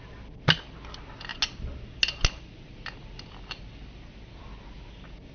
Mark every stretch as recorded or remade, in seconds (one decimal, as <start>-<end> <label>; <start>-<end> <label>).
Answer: 0.0-5.3 recorded

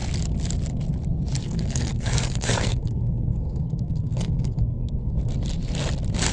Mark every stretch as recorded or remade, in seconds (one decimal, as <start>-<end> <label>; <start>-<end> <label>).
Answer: 0.0-1.4 recorded; 1.4-5.1 remade; 5.1-6.3 recorded

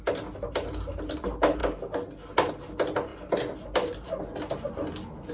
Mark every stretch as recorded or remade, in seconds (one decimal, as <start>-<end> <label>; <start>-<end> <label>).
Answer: 0.0-5.3 recorded

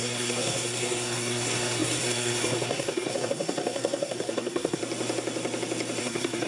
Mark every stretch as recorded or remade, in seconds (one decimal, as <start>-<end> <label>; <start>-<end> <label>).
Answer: 0.0-4.8 remade; 4.8-6.0 recorded; 6.0-6.5 remade